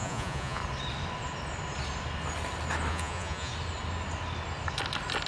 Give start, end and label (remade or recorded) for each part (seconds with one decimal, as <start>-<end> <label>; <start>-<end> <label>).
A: 0.0-0.6 remade; 0.6-2.9 recorded; 2.9-3.5 remade; 3.5-5.3 recorded